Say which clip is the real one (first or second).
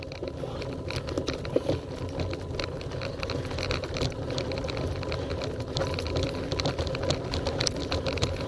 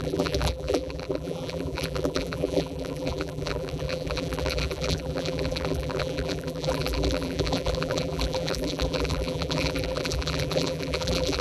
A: first